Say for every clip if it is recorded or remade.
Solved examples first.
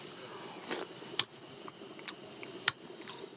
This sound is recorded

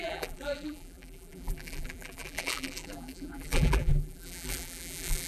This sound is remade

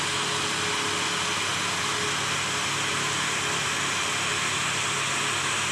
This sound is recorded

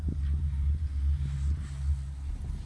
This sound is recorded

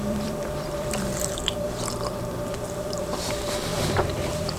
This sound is remade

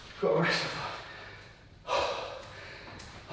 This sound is recorded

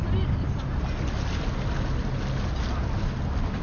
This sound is recorded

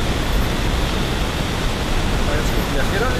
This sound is recorded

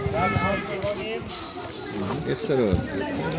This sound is recorded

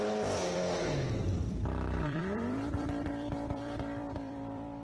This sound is remade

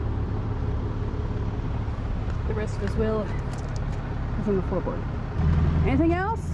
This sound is recorded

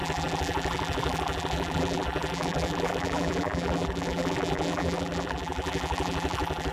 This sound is remade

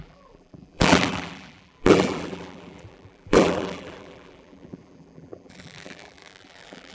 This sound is remade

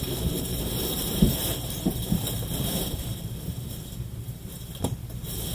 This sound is remade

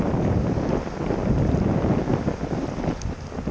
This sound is recorded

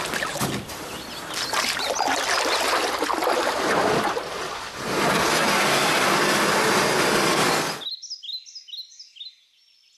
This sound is recorded